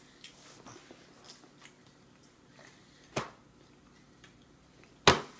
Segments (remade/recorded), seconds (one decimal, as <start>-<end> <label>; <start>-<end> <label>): 0.0-1.8 recorded; 1.8-4.9 remade; 4.9-5.4 recorded